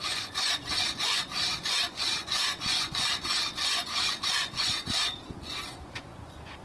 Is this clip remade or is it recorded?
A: remade